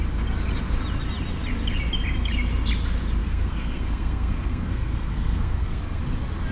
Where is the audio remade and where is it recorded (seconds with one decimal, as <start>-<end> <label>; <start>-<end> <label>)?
0.0-3.2 recorded; 3.2-6.0 remade; 6.0-6.5 recorded